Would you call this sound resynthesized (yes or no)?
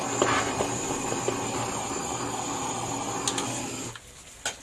no